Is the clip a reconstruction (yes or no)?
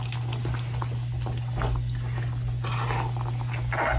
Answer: no